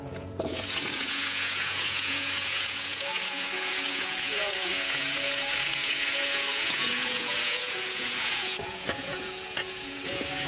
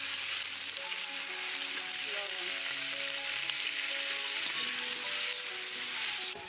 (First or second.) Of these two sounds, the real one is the second